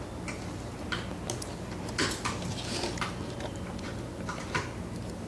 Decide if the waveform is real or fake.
real